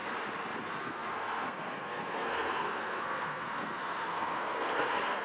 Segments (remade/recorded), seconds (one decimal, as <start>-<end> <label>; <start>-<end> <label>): 0.0-0.6 recorded; 0.6-5.2 remade